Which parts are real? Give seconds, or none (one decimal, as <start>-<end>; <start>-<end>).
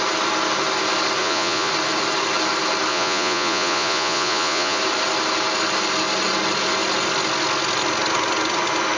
0.0-1.2; 1.7-2.9; 4.8-9.0